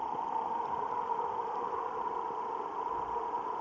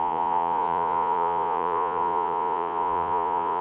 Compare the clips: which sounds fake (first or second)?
second